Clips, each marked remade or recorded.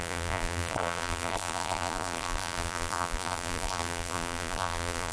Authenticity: remade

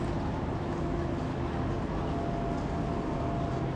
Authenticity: recorded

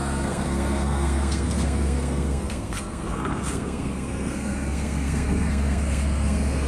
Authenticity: remade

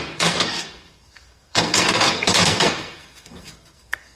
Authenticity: remade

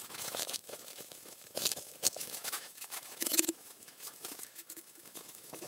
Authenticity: remade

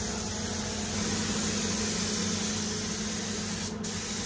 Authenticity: recorded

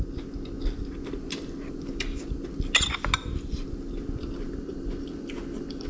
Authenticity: recorded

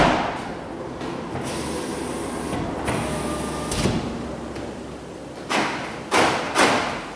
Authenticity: recorded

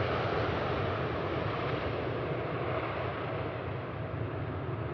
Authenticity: recorded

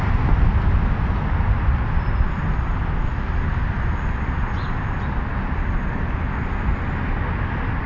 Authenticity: recorded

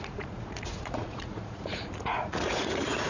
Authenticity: remade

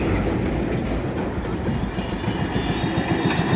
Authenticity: recorded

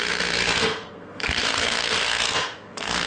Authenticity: remade